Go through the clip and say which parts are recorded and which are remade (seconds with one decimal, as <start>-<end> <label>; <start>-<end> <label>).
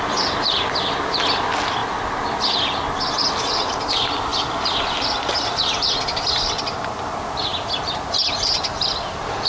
0.0-9.5 recorded